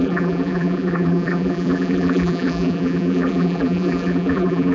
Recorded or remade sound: remade